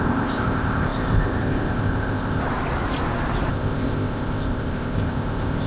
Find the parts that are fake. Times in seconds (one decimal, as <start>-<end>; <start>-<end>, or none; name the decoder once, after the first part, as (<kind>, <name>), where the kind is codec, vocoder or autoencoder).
0.0-2.4 (codec, ZipCodec); 3.5-5.7